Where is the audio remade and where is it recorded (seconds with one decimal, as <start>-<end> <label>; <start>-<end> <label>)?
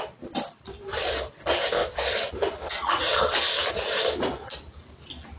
0.0-5.4 recorded